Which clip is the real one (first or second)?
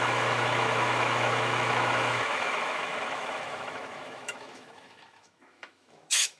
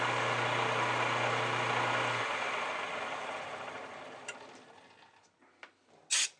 second